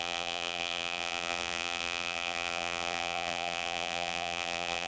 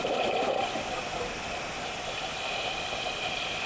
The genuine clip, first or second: second